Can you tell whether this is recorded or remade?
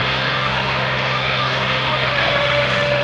remade